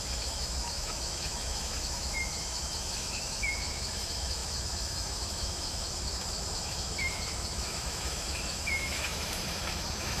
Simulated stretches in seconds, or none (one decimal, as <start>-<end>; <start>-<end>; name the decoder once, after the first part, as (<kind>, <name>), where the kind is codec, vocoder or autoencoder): 0.0-10.2 (autoencoder, DAC-VAE)